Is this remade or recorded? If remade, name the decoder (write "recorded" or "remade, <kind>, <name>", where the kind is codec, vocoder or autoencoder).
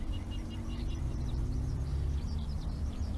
remade, vocoder, BigVGAN v2